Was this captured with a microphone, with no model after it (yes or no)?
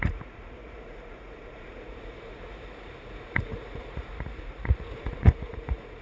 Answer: no